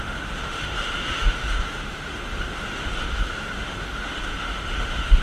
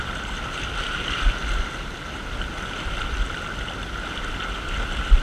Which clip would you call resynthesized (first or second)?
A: first